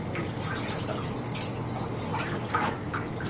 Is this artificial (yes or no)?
no